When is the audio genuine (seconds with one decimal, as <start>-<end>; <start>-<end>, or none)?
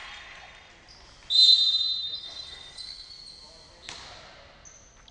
0.7-2.2; 3.2-5.1